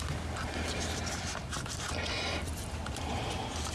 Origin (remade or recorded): recorded